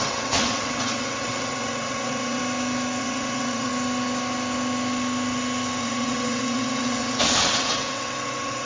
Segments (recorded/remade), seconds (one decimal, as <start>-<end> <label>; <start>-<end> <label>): 0.0-2.4 remade; 2.4-3.0 recorded; 3.0-3.7 remade; 3.7-5.8 recorded; 5.8-8.7 remade